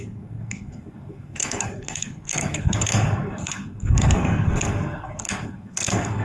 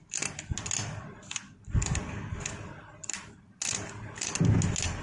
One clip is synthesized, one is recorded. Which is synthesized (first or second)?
first